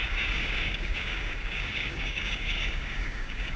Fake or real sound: fake